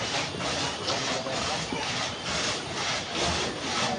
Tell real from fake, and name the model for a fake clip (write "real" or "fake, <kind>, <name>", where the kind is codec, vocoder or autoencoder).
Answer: real